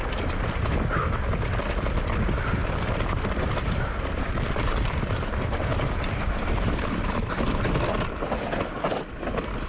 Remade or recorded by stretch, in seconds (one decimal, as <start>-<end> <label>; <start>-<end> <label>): 0.0-2.6 recorded; 2.6-7.3 remade; 7.3-9.7 recorded